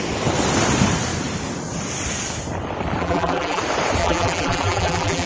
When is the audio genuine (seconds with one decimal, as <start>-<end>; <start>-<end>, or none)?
0.0-3.0; 3.6-4.0